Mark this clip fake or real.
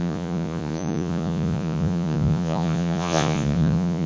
fake